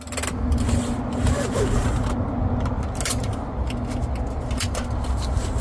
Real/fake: real